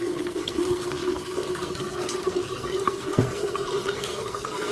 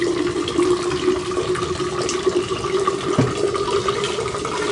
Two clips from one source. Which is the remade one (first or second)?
first